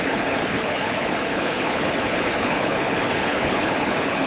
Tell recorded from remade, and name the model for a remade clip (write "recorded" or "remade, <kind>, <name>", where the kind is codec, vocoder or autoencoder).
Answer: remade, codec, HILCodec